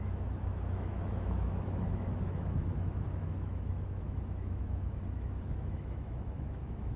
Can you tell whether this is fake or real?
fake